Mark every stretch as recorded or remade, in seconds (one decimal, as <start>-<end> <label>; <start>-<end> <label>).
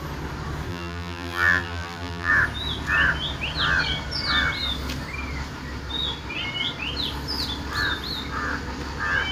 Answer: 0.0-0.7 recorded; 0.7-2.3 remade; 2.3-9.3 recorded